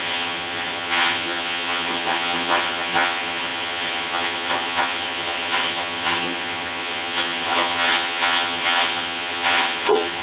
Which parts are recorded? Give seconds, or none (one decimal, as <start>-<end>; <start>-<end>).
none